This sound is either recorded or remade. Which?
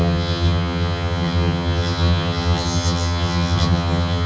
remade